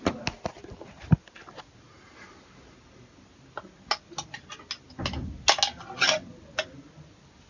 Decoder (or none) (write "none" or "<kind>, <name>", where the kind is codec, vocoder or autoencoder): none